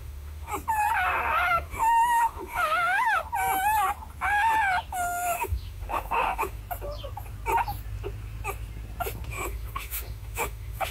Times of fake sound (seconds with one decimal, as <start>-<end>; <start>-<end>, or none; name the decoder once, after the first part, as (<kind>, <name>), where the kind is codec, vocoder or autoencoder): 0.0-0.5 (autoencoder, DAC-VAE); 1.5-3.2; 4.9-6.6; 9.3-10.9

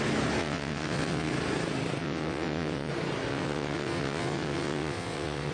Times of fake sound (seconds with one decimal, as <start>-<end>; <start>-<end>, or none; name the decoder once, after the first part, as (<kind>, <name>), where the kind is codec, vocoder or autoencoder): 0.4-1.3 (vocoder, WaveNeXt); 2.0-2.9; 3.3-5.5

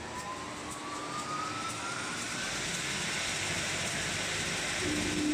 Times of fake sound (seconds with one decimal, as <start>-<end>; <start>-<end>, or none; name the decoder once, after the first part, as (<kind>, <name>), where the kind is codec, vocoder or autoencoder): none

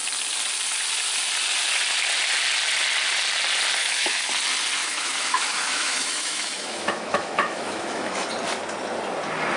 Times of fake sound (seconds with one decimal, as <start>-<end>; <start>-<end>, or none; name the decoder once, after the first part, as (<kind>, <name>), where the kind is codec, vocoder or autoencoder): 3.8-4.3 (autoencoder, DAC-VAE); 4.8-8.3

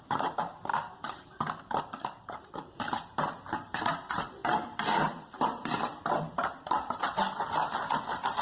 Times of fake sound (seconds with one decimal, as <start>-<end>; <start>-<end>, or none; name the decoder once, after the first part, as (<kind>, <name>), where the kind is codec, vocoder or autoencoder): 0.0-7.2 (vocoder, BigVGAN v2); 8.0-8.4

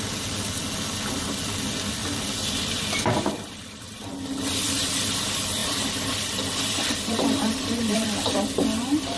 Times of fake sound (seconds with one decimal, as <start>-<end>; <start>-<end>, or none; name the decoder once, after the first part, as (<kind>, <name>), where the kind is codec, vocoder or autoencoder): 2.0-4.1 (vocoder, BigVGAN v2); 5.6-8.4

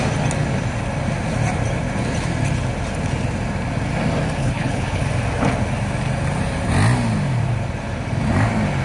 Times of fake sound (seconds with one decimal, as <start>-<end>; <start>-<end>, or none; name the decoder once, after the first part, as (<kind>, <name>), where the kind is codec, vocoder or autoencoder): 4.4-5.0 (codec, HILCodec)

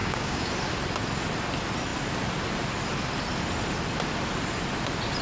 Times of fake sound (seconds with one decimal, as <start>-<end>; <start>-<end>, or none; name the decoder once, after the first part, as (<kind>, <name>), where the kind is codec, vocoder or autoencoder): 0.0-0.5 (codec, DAC)